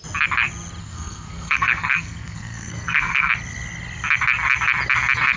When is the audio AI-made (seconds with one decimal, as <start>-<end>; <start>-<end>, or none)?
0.8-3.3